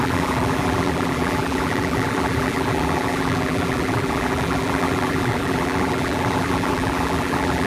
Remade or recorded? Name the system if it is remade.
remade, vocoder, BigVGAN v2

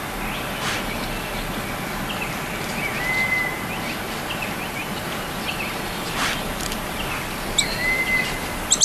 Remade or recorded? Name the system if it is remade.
recorded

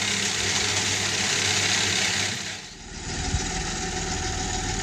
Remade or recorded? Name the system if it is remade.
recorded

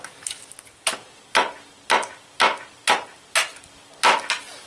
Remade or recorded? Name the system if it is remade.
recorded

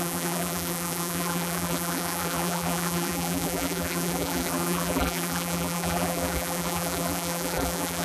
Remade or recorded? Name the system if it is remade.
remade, vocoder, BigVGAN v2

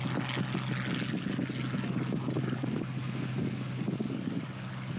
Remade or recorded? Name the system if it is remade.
recorded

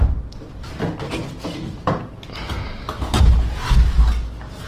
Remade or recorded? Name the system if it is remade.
recorded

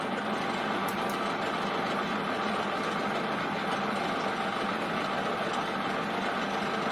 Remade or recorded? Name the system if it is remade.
recorded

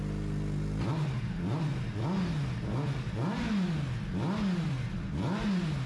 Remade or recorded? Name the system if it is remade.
recorded